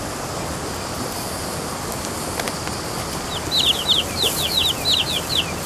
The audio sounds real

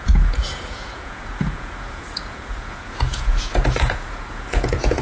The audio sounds fake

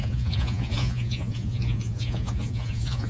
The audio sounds fake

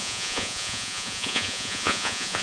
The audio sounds fake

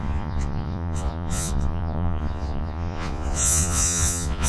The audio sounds fake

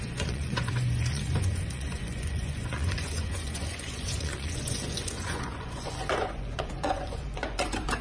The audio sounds fake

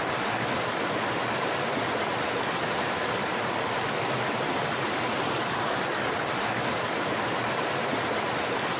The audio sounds real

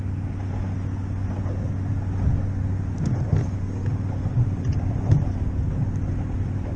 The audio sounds real